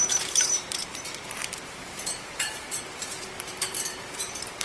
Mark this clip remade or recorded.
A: remade